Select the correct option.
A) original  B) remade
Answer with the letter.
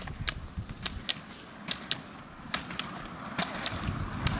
A